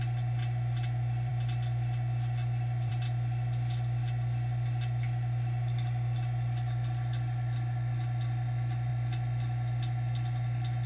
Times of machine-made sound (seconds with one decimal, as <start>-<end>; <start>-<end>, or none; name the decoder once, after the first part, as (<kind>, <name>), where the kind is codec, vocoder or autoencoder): none